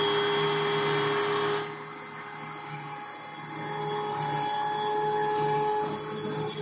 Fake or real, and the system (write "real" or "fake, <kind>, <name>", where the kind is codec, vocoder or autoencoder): real